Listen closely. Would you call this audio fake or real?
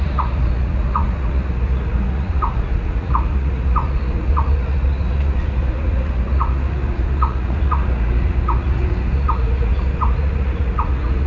fake